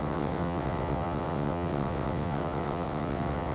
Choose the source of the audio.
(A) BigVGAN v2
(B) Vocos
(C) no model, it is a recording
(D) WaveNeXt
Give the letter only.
D